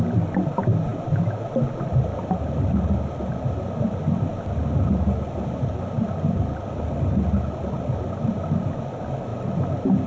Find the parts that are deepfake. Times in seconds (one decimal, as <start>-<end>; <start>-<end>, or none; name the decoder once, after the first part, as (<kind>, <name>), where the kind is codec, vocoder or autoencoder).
none